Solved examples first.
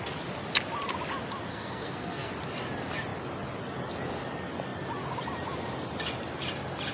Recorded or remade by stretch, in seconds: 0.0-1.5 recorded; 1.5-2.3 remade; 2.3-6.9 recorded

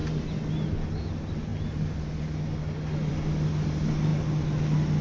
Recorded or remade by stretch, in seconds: 0.0-5.0 recorded

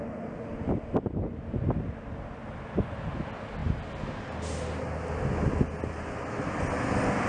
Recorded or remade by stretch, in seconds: 0.0-7.3 recorded

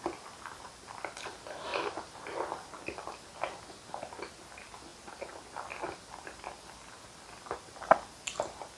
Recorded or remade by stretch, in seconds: 0.0-8.8 recorded

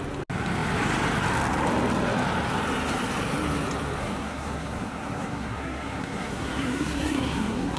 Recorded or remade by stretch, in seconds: 0.0-4.0 recorded; 4.0-7.8 remade

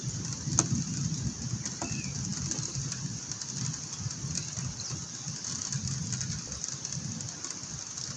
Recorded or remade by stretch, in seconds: 0.0-8.2 recorded